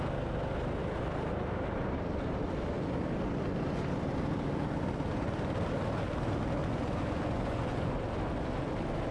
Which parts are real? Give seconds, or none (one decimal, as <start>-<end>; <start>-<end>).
0.0-6.6; 7.9-9.1